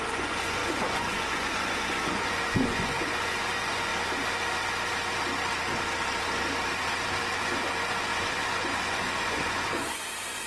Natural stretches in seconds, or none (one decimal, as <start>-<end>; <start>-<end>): 3.9-7.3